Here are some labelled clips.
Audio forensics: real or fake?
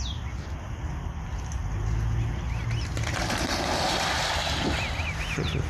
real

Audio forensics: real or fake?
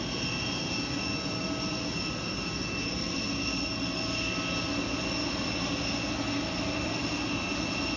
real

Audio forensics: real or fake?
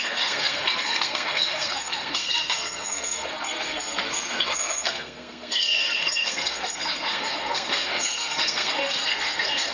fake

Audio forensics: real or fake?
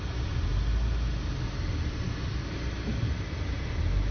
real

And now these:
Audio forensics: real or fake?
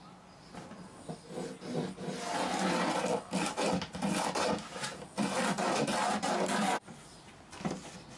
real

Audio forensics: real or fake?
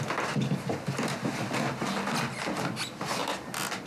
real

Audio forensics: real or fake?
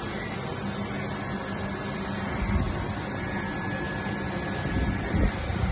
real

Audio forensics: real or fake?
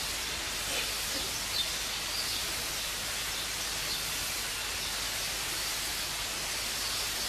real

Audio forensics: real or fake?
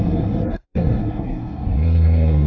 fake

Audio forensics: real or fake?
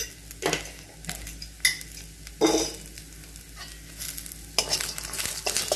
real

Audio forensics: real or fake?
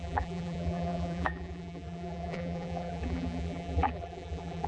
fake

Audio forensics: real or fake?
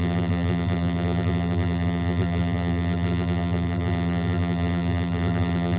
fake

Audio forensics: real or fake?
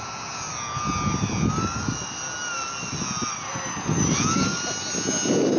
real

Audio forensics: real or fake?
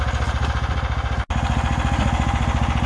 real